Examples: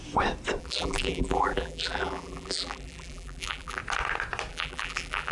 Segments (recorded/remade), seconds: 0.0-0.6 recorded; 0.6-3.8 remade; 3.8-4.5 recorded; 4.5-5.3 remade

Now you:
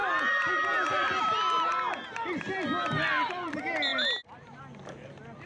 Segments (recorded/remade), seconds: 0.0-5.5 recorded

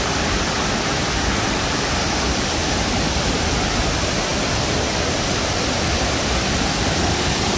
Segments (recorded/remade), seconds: 0.0-7.6 remade

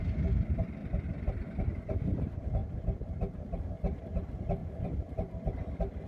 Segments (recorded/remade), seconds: 0.0-0.8 recorded; 0.8-1.7 remade; 1.7-6.1 recorded

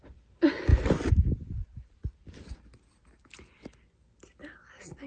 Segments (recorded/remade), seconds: 0.0-0.7 recorded; 0.7-1.9 remade; 1.9-5.1 recorded

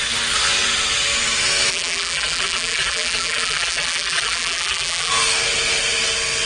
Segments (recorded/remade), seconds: 0.0-1.7 recorded; 1.7-5.1 remade; 5.1-6.5 recorded